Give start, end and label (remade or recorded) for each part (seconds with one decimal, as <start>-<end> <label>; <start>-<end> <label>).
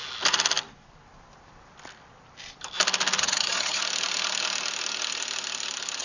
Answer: 0.0-3.2 recorded; 3.2-3.8 remade; 3.8-6.0 recorded